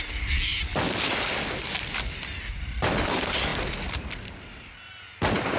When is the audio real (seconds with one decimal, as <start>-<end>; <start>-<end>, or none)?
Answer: 0.0-5.6